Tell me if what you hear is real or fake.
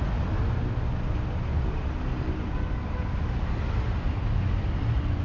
real